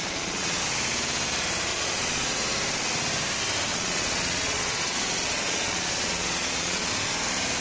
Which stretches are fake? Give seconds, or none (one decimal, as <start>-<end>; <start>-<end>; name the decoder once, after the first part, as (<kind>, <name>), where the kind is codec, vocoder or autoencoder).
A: 0.0-0.6 (vocoder, Vocos); 1.7-2.3; 3.7-6.9